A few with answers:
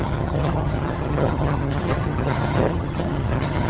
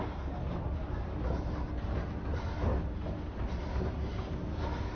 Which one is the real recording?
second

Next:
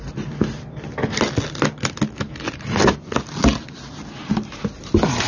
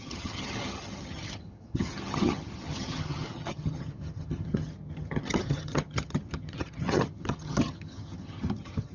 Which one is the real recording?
first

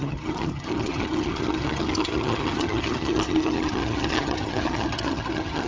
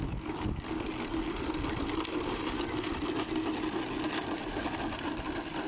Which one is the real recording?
second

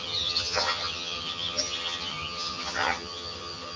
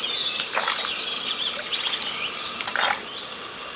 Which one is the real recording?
second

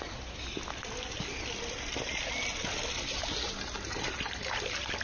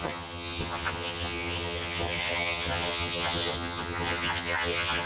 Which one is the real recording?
first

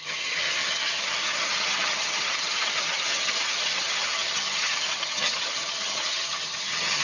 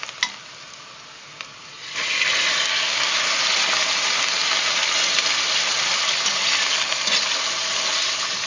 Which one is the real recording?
second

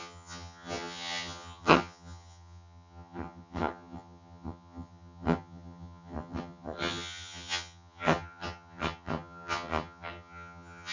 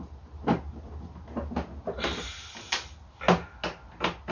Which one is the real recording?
second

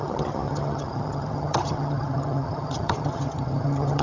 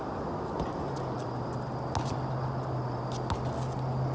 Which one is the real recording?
second